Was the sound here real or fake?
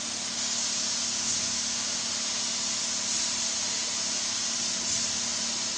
real